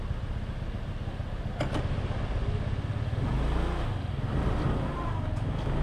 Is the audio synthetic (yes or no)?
no